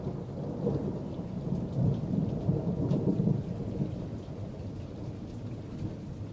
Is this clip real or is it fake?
real